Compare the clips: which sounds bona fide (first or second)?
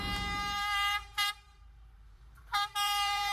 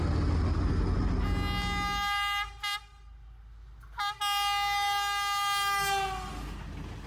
second